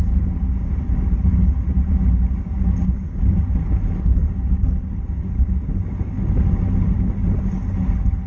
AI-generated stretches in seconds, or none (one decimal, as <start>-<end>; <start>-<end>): none